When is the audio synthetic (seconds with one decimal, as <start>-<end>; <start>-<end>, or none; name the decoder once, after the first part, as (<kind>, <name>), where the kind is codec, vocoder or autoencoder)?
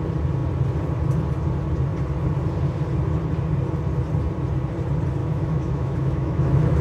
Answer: 5.2-6.8 (autoencoder, DAC-VAE)